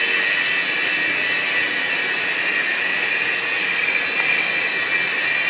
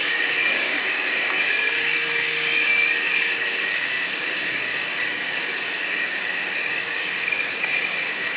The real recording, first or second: first